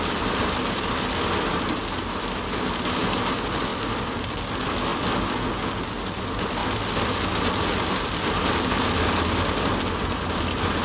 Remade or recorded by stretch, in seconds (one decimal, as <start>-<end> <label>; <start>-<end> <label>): 0.0-3.7 recorded; 3.7-4.3 remade; 4.3-4.9 recorded; 4.9-5.5 remade; 5.5-10.8 recorded